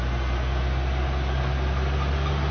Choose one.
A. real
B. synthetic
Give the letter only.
A